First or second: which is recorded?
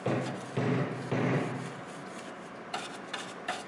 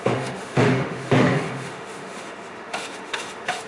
first